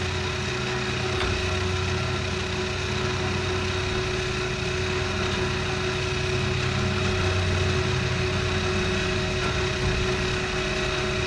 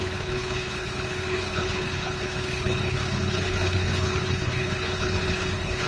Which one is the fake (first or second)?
second